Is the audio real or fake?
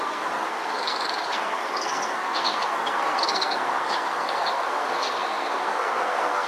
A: fake